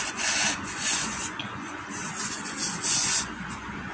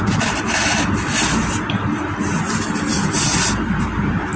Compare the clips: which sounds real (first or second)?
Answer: second